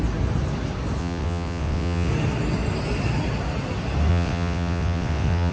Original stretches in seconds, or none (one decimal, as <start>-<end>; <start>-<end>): 0.0-1.0; 2.1-4.1